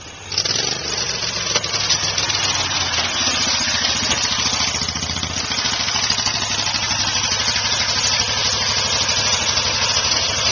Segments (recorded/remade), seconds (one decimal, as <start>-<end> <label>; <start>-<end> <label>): 0.0-10.5 recorded